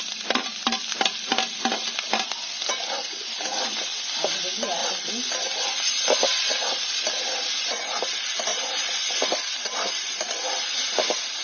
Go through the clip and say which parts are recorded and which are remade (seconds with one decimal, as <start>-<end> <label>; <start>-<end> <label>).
0.0-4.8 recorded; 4.8-6.5 remade; 6.5-8.5 recorded; 8.5-11.4 remade